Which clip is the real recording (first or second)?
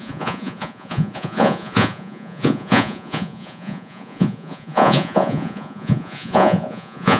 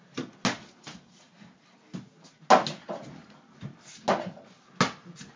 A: second